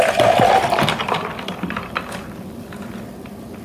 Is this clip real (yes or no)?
no